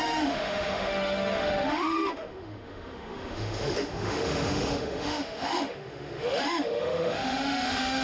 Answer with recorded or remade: remade